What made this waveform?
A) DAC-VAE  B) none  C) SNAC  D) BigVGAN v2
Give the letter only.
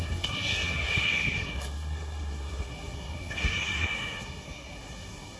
C